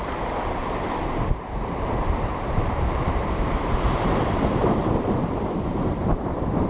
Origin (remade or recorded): remade